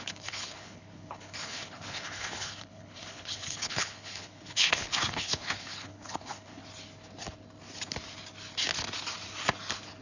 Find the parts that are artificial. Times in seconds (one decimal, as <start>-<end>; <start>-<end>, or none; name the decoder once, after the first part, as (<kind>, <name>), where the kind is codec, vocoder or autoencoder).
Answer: 0.0-6.6 (codec, HILCodec)